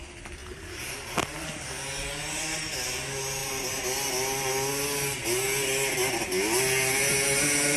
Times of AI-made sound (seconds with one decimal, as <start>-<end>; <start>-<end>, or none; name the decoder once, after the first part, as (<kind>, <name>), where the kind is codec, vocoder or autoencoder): none

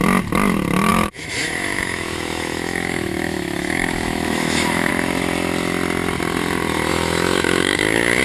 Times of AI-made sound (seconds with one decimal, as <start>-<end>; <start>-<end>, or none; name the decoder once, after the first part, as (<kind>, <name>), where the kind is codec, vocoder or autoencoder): 0.9-4.9 (autoencoder, DAC-VAE); 6.9-8.2